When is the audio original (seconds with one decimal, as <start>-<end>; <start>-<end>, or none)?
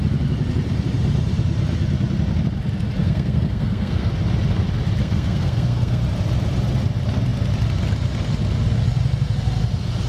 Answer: 0.0-3.0; 4.1-5.0; 6.0-10.1